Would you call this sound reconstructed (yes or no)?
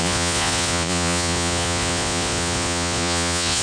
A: yes